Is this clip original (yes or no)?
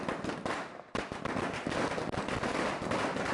yes